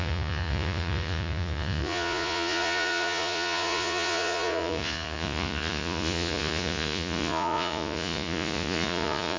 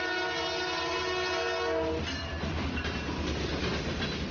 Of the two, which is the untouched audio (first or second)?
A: second